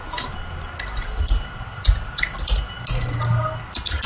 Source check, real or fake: real